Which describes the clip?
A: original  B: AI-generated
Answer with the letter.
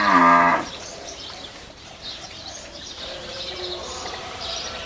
B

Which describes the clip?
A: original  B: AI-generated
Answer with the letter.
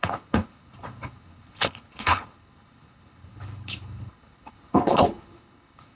B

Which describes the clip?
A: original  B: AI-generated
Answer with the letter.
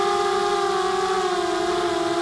A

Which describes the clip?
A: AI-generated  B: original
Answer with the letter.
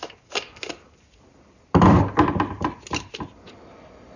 B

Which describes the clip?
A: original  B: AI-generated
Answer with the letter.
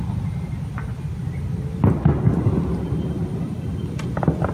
A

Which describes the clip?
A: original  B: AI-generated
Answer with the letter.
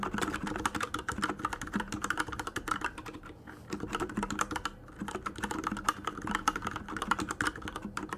B